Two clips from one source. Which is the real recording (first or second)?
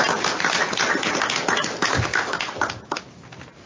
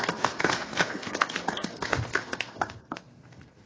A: first